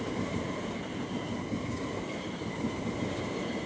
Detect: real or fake real